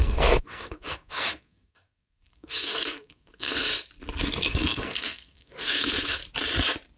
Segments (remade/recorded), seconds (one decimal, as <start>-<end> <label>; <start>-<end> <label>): 0.0-3.7 remade; 3.7-4.2 recorded; 4.2-6.2 remade; 6.2-7.0 recorded